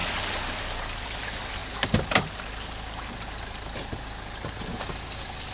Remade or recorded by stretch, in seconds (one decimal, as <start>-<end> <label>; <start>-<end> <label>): 0.0-5.5 recorded

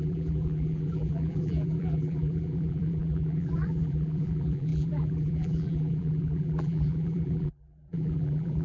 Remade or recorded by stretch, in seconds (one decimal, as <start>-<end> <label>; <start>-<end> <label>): 0.0-8.6 remade

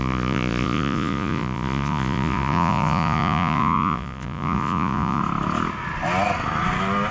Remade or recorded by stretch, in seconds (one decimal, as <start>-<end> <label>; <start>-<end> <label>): 0.0-5.2 remade; 5.2-7.1 recorded

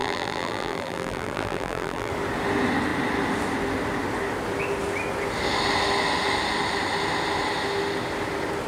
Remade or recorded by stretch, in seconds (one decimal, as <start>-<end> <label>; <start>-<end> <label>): 0.0-2.1 remade; 2.1-8.7 recorded

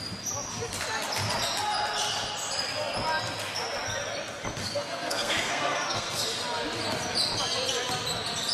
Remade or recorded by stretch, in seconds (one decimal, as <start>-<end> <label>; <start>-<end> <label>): 0.0-4.6 recorded; 4.6-6.2 remade; 6.2-8.5 recorded